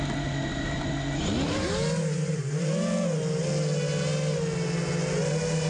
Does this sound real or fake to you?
real